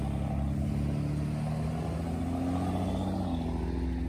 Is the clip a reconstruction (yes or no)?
no